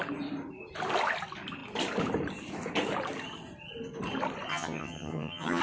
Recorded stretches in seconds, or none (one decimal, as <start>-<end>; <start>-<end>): 0.0-4.5